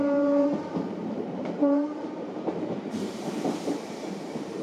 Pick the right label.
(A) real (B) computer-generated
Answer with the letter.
B